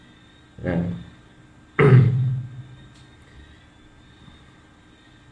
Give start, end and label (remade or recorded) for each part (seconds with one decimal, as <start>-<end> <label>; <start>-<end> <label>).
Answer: 0.0-5.3 recorded